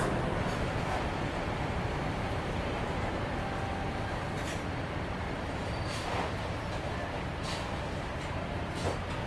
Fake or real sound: real